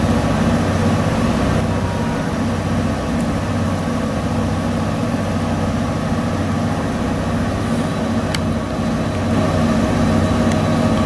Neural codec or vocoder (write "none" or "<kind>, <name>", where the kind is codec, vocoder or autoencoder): none